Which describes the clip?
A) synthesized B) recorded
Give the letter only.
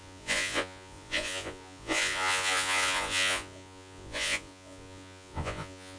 A